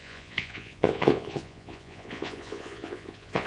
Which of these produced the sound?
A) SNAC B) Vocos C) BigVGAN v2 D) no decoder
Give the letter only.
B